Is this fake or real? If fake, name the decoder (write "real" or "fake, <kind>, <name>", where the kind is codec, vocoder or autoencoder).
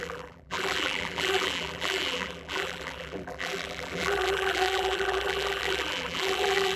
fake, vocoder, BigVGAN v2